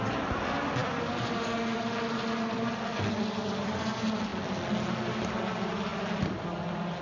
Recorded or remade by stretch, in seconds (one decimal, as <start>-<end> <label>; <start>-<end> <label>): 0.0-7.0 recorded